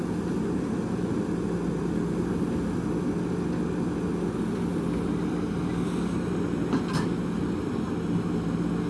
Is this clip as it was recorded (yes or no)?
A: yes